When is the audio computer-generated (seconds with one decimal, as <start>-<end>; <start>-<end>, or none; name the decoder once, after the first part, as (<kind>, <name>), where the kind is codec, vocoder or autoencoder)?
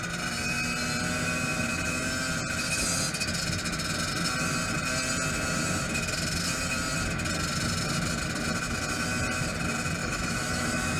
10.0-11.0 (autoencoder, DAC-VAE)